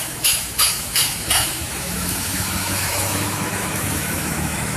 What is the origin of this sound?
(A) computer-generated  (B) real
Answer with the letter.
A